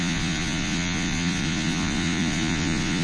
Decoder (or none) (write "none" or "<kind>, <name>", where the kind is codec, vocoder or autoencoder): vocoder, Vocos